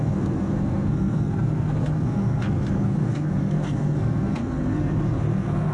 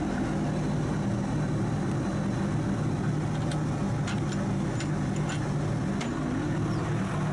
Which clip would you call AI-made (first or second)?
first